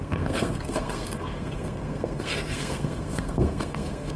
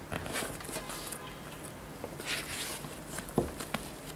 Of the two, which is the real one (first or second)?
second